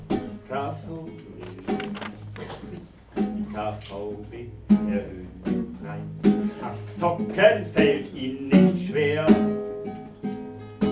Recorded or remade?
recorded